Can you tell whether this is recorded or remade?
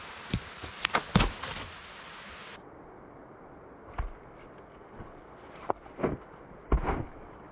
recorded